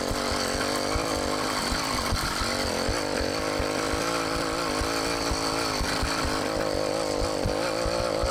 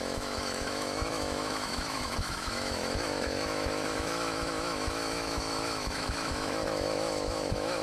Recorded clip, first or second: first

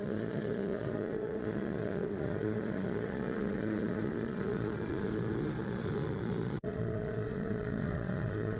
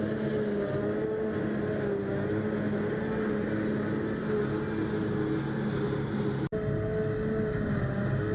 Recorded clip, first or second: second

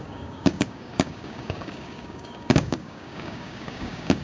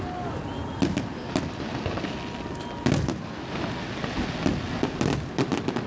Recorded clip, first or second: second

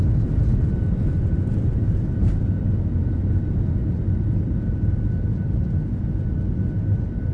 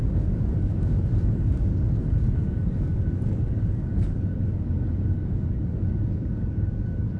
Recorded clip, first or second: first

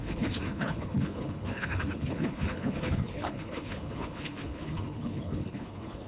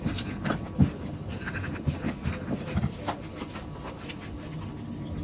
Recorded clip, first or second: second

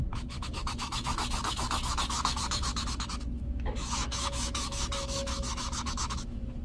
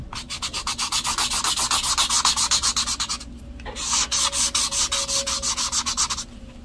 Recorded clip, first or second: second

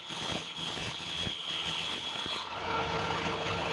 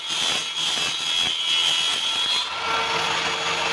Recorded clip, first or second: second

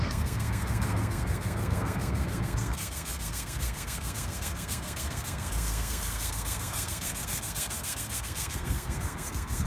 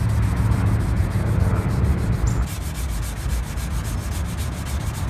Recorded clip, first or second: second